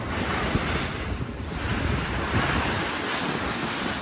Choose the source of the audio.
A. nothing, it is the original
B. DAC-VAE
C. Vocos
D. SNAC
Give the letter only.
A